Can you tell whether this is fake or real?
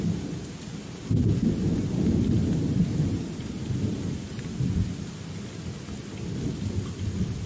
real